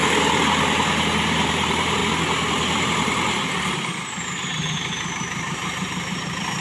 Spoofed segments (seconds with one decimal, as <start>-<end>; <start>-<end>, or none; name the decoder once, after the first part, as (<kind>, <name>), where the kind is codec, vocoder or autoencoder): 0.6-2.0 (vocoder, BigVGAN v2); 4.3-6.6